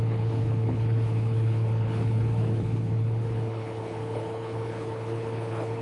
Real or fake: fake